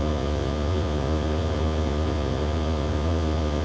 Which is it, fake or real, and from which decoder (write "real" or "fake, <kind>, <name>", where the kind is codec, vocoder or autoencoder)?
fake, vocoder, Vocos